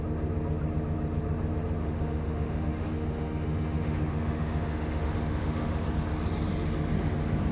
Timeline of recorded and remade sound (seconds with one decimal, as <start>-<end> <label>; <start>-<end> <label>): 0.0-1.8 recorded; 1.8-5.9 remade; 5.9-7.5 recorded